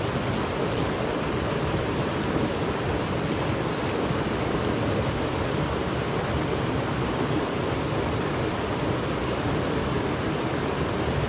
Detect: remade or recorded recorded